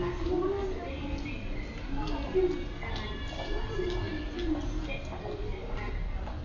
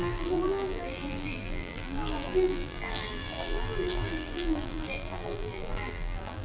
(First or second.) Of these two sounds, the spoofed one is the second